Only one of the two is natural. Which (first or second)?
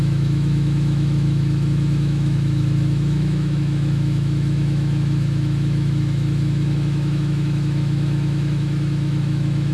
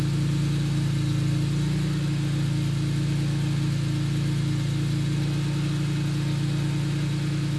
second